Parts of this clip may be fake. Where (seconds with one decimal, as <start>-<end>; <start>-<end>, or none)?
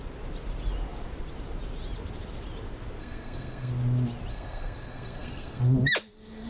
3.0-3.7; 4.3-5.6